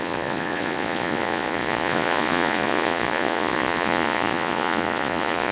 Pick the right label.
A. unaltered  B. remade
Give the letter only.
B